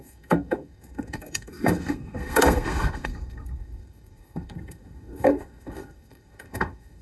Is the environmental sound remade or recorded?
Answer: remade